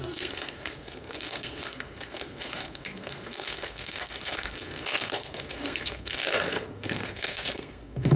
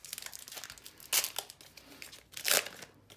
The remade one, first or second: first